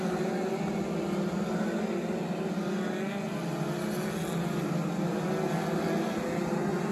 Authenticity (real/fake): real